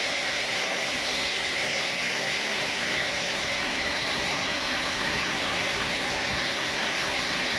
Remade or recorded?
remade